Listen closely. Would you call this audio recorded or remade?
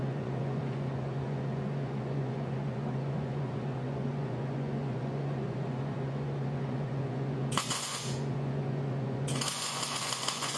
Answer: remade